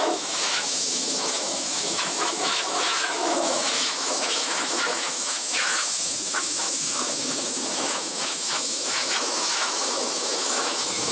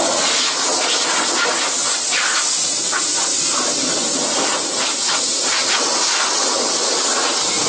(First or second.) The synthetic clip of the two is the first